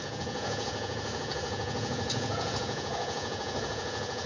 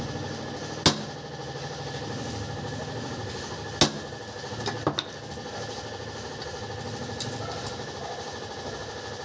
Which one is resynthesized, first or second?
first